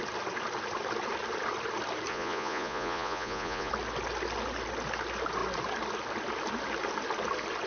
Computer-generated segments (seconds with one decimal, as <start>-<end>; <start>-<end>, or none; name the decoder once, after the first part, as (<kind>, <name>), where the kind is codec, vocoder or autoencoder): 2.1-3.7 (vocoder, Vocos)

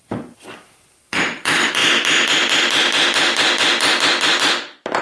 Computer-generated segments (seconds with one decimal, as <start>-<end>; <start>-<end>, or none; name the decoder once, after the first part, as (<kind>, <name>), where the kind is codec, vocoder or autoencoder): 0.0-1.8 (vocoder, BigVGAN v2)

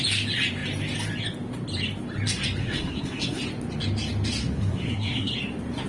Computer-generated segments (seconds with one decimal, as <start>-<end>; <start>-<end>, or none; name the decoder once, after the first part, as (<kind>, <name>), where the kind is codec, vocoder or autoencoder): 2.6-3.4 (codec, SNAC); 4.4-5.3

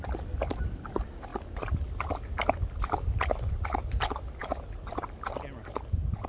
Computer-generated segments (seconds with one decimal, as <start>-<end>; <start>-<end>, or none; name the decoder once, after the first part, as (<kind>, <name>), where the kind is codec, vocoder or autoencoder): none

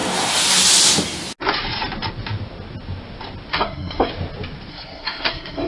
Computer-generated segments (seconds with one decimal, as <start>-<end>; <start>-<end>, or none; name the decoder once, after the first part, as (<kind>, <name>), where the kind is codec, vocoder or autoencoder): 3.5-4.1 (codec, SNAC); 4.7-5.7

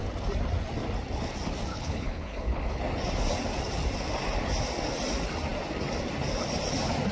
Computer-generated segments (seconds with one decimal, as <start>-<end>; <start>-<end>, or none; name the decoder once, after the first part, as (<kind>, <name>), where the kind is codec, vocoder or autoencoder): 1.7-2.8 (codec, HILCodec)

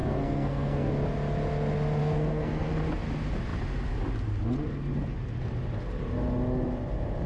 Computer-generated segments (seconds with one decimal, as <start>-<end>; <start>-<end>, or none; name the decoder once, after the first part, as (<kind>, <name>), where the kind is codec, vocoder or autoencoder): 0.0-0.9 (codec, SNAC); 2.0-2.7